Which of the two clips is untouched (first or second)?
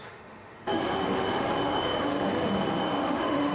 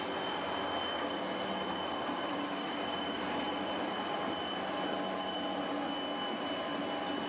second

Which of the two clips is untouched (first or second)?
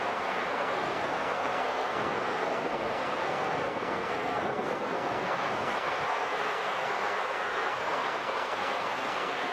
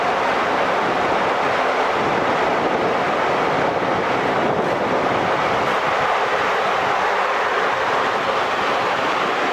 second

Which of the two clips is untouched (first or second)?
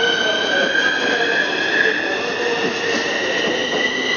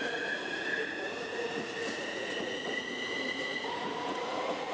first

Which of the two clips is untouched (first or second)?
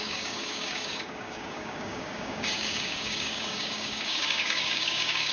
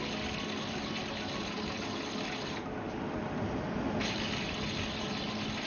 second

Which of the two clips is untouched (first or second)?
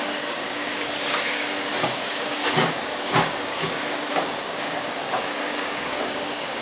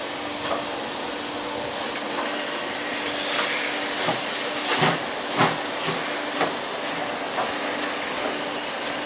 second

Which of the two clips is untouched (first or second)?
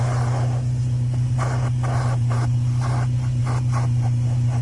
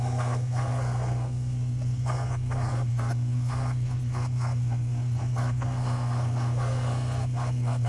first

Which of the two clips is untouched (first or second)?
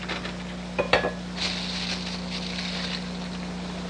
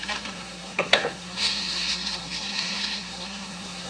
first